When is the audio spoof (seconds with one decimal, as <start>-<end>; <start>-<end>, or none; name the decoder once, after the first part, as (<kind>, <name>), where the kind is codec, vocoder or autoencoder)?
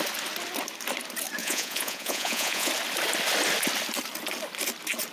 1.4-2.7 (vocoder, Vocos)